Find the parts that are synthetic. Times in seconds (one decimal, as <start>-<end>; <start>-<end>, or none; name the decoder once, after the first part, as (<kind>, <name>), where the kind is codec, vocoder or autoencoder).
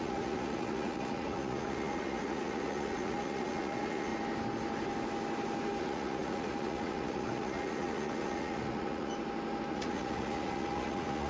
0.0-4.1 (vocoder, Vocos); 5.8-9.1; 9.7-11.3